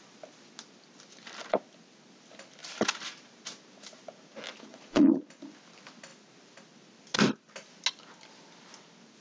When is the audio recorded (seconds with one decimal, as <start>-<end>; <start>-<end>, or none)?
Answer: 0.0-4.7; 5.2-9.2